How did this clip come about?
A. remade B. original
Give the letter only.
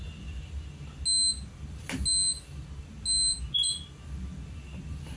B